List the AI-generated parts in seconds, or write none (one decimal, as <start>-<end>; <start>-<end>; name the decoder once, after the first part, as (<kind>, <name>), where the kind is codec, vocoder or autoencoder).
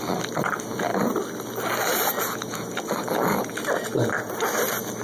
none